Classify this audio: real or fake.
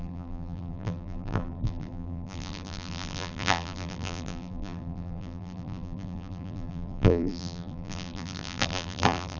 fake